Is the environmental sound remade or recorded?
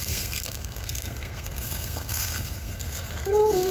remade